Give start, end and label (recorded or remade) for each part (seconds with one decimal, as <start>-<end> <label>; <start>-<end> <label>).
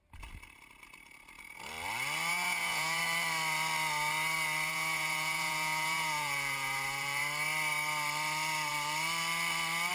0.0-2.3 recorded; 2.3-3.0 remade; 3.0-4.7 recorded; 4.7-7.2 remade; 7.2-9.9 recorded